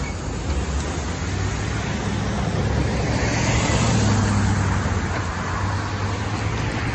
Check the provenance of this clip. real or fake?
real